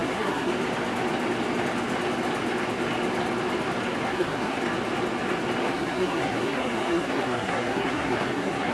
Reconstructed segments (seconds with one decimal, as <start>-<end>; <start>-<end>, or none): 0.0-0.5; 4.1-4.6; 5.6-8.7